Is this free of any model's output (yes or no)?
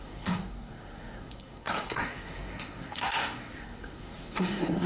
no